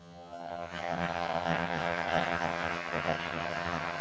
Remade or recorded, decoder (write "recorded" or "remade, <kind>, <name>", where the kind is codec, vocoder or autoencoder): remade, vocoder, HiFi-GAN